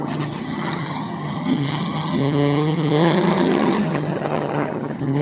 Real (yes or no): no